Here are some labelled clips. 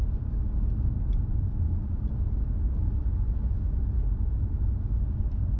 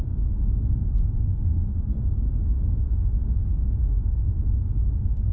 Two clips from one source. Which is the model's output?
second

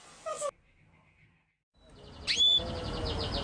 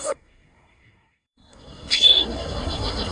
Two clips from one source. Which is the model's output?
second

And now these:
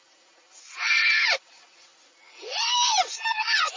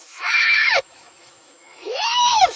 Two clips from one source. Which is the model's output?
second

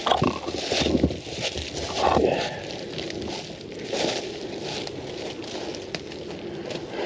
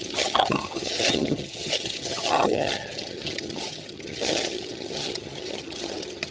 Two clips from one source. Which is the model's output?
second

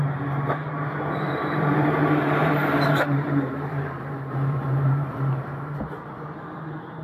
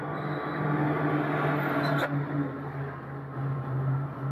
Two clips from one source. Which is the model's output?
first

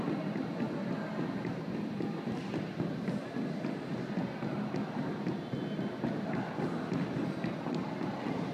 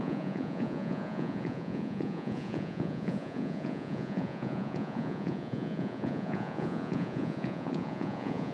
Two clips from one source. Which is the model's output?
second